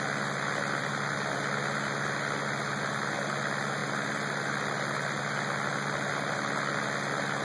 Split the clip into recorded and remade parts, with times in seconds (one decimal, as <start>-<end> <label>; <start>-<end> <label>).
0.0-7.4 recorded